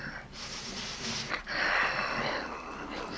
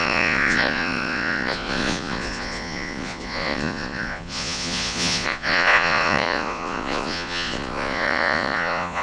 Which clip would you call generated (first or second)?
second